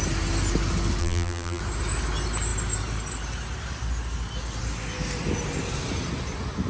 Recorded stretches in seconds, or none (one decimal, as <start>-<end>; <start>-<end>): 0.0-1.0; 1.6-6.7